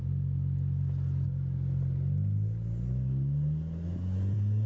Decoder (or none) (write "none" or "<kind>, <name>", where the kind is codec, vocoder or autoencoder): none